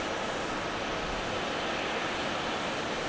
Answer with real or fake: real